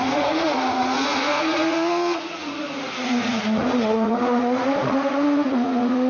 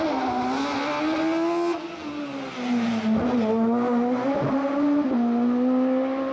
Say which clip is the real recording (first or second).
second